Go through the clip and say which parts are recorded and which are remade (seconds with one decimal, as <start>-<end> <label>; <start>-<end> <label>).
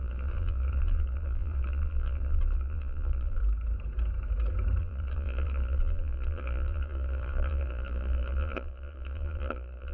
0.0-3.4 remade; 3.4-4.8 recorded; 4.8-9.9 remade